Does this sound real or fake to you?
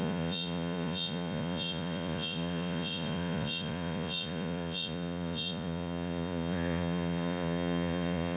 fake